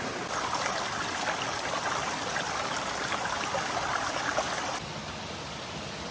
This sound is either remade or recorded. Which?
recorded